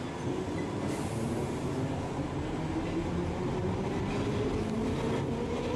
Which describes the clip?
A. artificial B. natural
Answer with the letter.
B